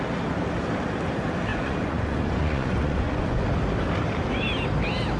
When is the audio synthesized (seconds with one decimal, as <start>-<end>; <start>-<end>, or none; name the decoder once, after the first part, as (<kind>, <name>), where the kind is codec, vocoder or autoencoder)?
1.5-3.4 (vocoder, Vocos)